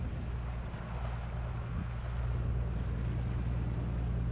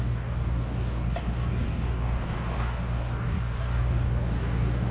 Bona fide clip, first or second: first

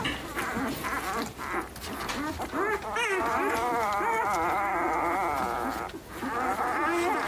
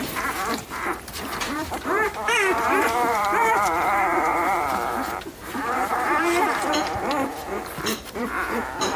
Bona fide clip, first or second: first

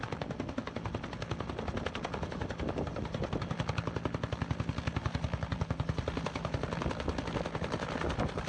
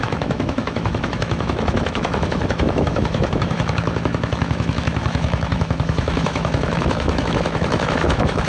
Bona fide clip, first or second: first